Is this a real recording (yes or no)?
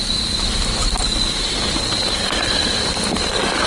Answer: yes